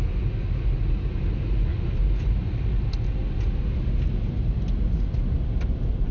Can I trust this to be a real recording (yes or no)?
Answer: yes